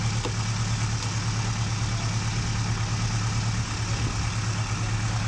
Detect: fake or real real